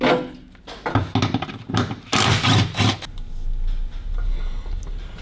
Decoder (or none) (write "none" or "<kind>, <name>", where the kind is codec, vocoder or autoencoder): none